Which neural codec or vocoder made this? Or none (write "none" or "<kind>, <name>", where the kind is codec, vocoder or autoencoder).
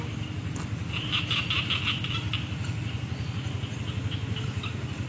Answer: none